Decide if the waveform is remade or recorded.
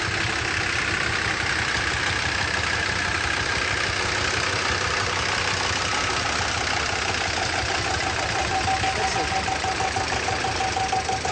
recorded